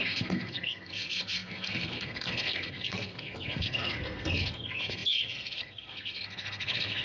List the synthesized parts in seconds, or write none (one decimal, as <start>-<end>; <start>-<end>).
0.0-7.0